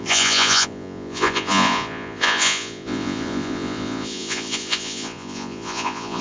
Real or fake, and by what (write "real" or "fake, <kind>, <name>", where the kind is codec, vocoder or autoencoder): fake, vocoder, Vocos